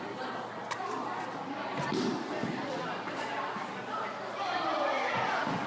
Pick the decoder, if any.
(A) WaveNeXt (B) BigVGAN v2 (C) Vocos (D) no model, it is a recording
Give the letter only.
D